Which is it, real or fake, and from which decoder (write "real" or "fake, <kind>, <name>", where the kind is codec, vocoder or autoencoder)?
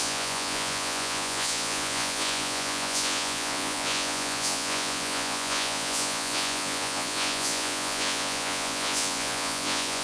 fake, vocoder, Vocos